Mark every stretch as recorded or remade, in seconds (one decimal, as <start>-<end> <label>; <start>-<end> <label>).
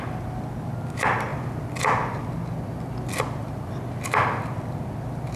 0.0-1.3 recorded; 1.3-1.8 remade; 1.8-3.4 recorded; 3.4-3.9 remade; 3.9-5.4 recorded